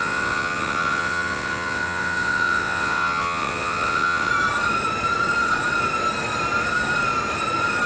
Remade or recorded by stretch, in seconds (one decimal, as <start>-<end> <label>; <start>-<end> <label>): 0.0-4.3 remade; 4.3-7.9 recorded